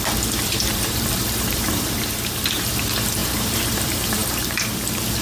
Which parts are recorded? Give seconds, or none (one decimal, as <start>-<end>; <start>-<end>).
none